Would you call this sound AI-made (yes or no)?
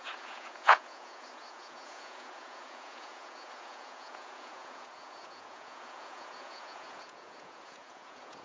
yes